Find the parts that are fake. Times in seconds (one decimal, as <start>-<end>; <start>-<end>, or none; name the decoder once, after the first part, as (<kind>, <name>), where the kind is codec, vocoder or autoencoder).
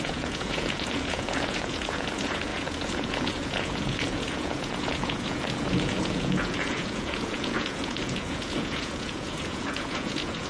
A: 0.0-10.5 (vocoder, Vocos)